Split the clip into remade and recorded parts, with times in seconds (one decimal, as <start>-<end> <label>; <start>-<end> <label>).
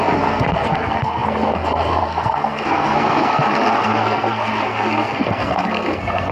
0.0-6.3 remade